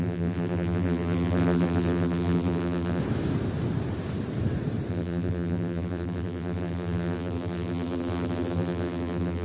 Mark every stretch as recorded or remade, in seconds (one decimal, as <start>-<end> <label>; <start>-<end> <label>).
0.0-3.0 remade; 3.0-4.9 recorded; 4.9-9.4 remade

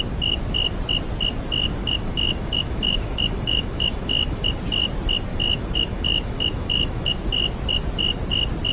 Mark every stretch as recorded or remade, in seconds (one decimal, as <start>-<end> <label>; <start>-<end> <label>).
0.0-1.8 recorded; 1.8-4.5 remade; 4.5-5.3 recorded; 5.3-7.1 remade; 7.1-8.7 recorded

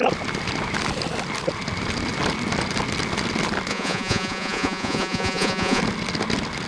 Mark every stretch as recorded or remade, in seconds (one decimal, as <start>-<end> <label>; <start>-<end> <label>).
0.0-3.7 recorded; 3.7-5.8 remade; 5.8-6.7 recorded